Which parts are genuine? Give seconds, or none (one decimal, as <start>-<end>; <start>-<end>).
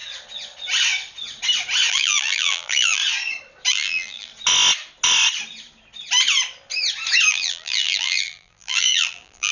0.0-1.9; 3.0-3.7; 4.3-7.3